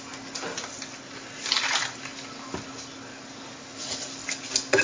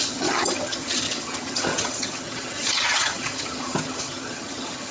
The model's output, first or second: second